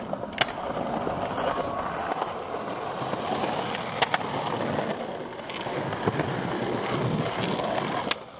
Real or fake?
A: real